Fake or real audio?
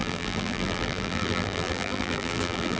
fake